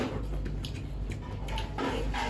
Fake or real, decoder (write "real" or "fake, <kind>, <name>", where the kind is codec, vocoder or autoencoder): real